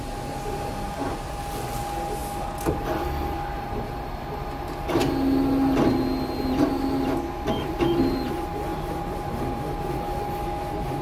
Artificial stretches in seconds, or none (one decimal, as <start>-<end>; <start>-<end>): 8.7-9.4